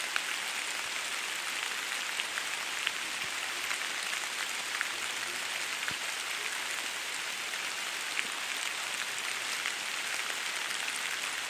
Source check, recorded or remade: recorded